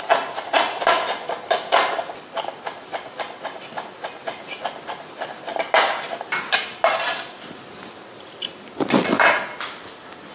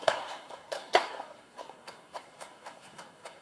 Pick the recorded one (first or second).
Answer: first